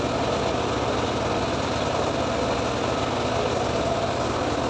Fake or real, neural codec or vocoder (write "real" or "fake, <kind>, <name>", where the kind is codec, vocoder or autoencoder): real